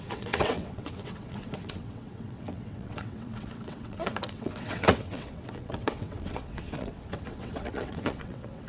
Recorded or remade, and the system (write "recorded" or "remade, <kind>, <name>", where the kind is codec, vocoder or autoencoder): remade, vocoder, WaveNeXt